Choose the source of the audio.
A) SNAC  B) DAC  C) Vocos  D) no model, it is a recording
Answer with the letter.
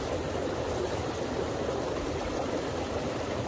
D